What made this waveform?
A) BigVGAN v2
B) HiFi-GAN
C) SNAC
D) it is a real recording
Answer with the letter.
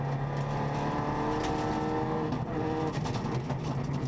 D